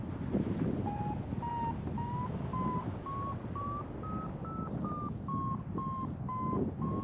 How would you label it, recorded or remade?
recorded